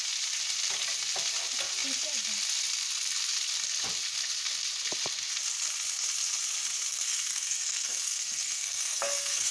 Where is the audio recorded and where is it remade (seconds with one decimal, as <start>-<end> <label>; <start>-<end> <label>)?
0.0-6.9 recorded; 6.9-9.5 remade